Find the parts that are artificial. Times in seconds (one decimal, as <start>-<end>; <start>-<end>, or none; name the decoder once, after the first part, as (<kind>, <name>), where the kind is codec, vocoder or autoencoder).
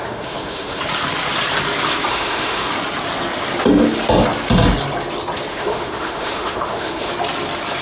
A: 0.0-0.8 (autoencoder, DAC-VAE); 2.1-2.7; 5.5-7.1